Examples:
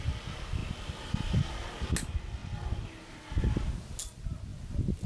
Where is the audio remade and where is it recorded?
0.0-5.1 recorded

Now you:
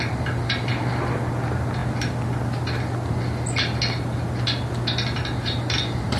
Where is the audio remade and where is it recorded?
0.0-6.2 recorded

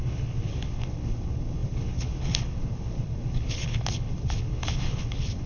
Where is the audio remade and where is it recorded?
0.0-5.5 remade

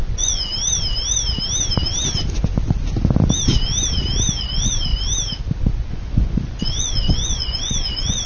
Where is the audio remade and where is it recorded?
0.0-0.5 remade; 0.5-4.4 recorded; 4.4-4.9 remade; 4.9-5.9 recorded; 5.9-8.3 remade

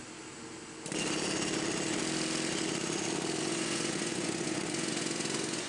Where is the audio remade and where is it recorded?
0.0-3.4 recorded; 3.4-5.7 remade

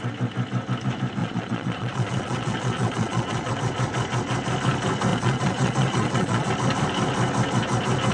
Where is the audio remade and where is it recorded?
0.0-1.2 recorded; 1.2-3.5 remade; 3.5-5.1 recorded; 5.1-6.5 remade; 6.5-8.1 recorded

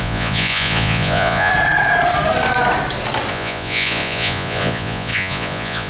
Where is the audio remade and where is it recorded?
0.0-1.5 remade; 1.5-3.3 recorded; 3.3-5.9 remade